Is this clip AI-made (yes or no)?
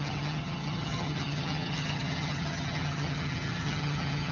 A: yes